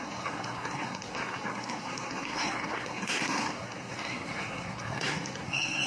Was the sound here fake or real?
fake